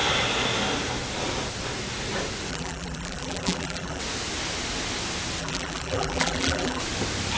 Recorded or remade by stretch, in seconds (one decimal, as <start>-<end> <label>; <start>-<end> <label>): 0.0-2.5 recorded; 2.5-4.0 remade; 4.0-5.4 recorded; 5.4-6.8 remade; 6.8-7.4 recorded